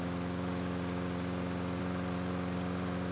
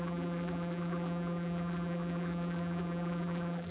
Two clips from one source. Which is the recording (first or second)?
first